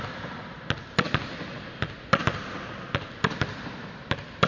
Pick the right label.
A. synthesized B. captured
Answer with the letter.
B